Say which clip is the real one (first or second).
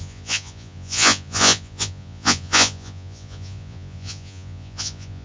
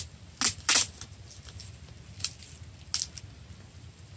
second